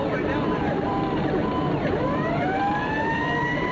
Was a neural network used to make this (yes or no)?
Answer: yes